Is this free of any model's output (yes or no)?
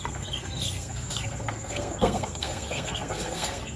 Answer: no